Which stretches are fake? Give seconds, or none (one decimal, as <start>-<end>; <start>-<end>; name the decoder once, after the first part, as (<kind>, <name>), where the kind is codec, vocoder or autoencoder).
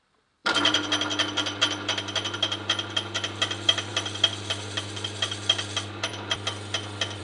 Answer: 0.0-3.9 (vocoder, BigVGAN v2); 4.5-6.1